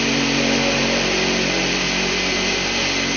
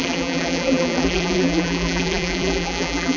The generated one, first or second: second